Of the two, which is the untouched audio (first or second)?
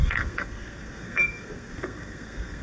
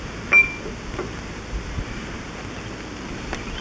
second